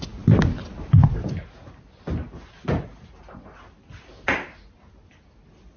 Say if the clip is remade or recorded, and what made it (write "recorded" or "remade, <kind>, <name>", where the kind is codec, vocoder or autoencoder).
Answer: recorded